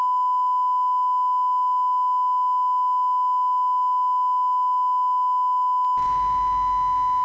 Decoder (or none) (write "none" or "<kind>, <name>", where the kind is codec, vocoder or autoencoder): none